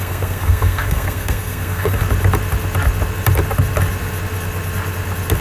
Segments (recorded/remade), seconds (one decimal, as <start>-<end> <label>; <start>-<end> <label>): 0.0-2.0 remade; 2.0-5.4 recorded